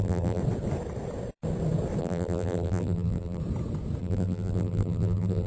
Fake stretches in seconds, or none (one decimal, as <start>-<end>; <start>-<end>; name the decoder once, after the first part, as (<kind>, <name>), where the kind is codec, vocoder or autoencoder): 0.0-0.4 (vocoder, BigVGAN v2); 2.0-3.4; 4.0-5.5